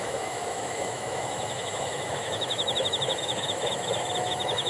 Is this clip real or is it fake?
fake